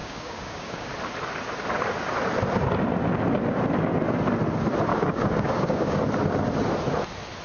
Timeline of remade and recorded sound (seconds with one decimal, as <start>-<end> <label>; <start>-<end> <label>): 0.0-0.9 remade; 0.9-4.9 recorded; 4.9-6.0 remade; 6.0-7.4 recorded